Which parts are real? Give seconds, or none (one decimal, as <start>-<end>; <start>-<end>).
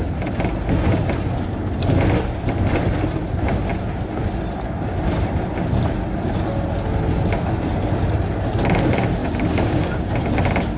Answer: 0.0-9.2; 10.1-10.8